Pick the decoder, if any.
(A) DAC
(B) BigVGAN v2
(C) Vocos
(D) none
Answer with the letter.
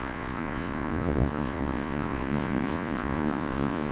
C